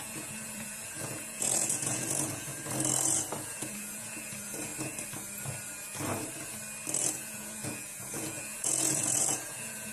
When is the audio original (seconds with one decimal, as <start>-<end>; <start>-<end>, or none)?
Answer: 2.5-3.5; 4.7-7.1